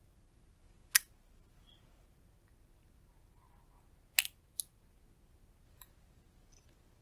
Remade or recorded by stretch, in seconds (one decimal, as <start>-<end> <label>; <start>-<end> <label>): 0.0-7.0 recorded